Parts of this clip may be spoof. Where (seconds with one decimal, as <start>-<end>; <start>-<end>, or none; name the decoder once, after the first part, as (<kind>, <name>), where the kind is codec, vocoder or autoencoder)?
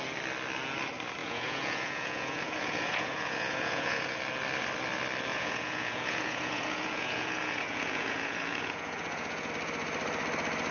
1.2-4.2 (vocoder, Vocos); 5.3-9.5